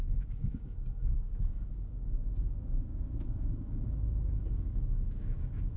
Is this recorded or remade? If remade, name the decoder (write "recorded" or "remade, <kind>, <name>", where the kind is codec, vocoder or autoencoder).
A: remade, codec, DAC